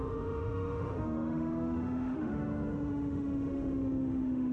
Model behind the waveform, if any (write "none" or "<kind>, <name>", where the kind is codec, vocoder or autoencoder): autoencoder, DAC-VAE